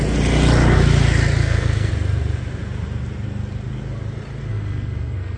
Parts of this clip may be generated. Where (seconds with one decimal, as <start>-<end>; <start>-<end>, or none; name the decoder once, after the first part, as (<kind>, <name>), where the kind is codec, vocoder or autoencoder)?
1.4-1.9 (codec, SNAC); 4.5-5.4